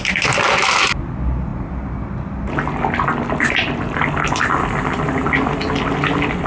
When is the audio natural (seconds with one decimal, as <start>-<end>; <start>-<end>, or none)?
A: 0.0-6.5